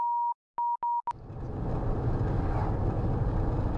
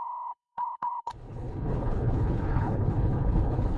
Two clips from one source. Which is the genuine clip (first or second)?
first